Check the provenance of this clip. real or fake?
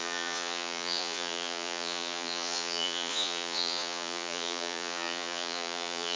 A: fake